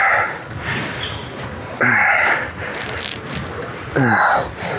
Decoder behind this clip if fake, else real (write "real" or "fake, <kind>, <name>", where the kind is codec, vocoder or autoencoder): real